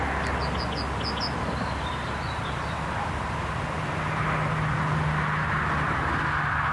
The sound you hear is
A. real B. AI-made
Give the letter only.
A